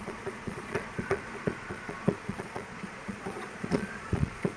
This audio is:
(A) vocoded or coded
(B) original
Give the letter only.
A